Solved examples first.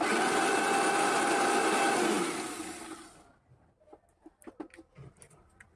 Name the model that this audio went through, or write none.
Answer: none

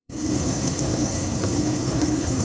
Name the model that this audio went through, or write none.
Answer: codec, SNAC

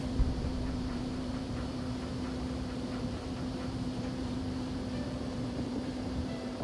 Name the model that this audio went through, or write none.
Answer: vocoder, BigVGAN v2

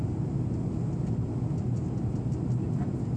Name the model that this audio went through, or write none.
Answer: none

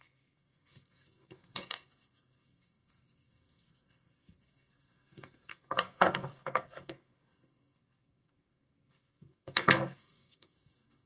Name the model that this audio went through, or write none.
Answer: codec, SNAC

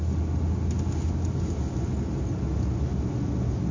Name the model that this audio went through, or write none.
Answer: none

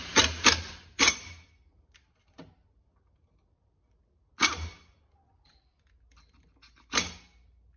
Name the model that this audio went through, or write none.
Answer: none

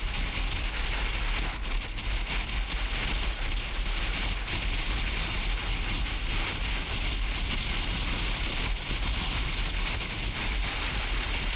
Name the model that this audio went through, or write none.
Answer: none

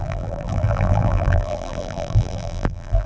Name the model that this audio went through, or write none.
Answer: vocoder, BigVGAN v2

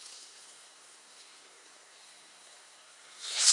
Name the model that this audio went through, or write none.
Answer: codec, SNAC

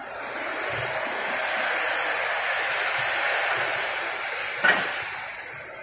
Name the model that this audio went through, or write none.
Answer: none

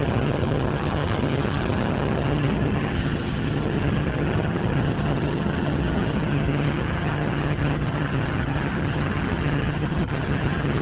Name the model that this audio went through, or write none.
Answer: vocoder, HiFi-GAN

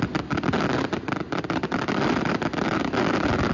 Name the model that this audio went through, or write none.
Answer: none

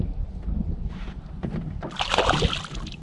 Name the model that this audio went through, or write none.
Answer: none